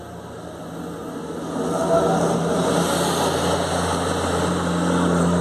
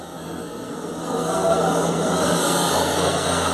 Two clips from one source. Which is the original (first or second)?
first